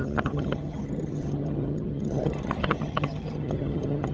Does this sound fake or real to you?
fake